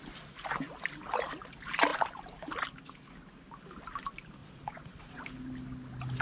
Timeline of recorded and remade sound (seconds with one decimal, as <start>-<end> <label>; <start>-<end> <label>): 0.0-4.4 recorded; 4.4-5.2 remade; 5.2-6.2 recorded